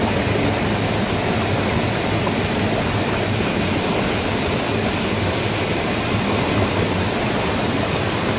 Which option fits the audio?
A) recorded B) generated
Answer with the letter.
A